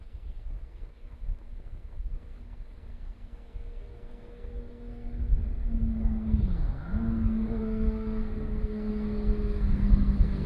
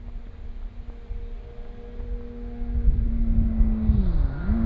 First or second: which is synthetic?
first